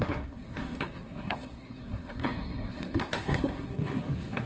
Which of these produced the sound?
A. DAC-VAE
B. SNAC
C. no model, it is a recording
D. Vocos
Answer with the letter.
B